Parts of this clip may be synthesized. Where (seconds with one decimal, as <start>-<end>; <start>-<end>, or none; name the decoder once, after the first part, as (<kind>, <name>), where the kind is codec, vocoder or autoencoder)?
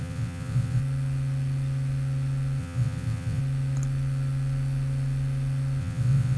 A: 0.0-0.8 (vocoder, WaveNeXt); 2.6-3.4; 5.8-6.4